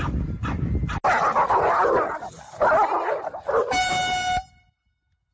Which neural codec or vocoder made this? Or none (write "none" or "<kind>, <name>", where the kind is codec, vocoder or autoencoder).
none